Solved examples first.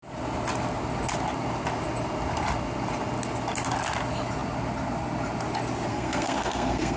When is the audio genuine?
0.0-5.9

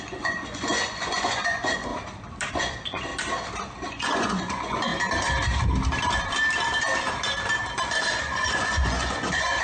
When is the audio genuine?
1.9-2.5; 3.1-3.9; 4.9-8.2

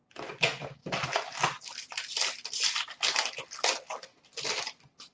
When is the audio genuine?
0.0-5.1

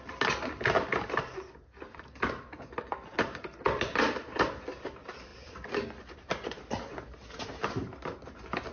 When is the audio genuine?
0.0-8.7

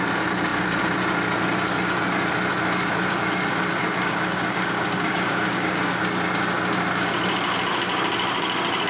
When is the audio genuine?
0.0-3.8; 6.0-8.9